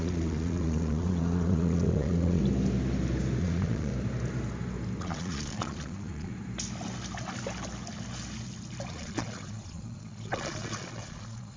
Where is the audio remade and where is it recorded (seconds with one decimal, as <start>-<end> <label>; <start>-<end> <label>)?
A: 0.0-2.4 remade; 2.4-3.4 recorded; 3.4-3.9 remade; 3.9-5.0 recorded; 5.0-6.3 remade; 6.3-8.9 recorded; 8.9-11.6 remade

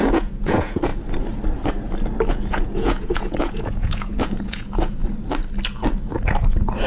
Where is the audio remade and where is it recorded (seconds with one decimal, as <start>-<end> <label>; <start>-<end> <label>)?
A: 0.0-0.9 remade; 0.9-2.3 recorded; 2.3-5.0 remade; 5.0-6.9 recorded

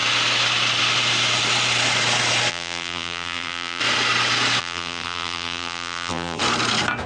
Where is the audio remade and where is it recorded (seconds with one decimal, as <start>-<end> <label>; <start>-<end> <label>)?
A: 0.0-2.5 recorded; 2.5-3.8 remade; 3.8-4.6 recorded; 4.6-6.4 remade; 6.4-7.1 recorded